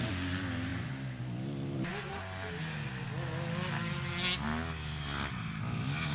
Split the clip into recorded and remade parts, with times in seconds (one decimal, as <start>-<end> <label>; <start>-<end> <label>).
0.0-6.1 recorded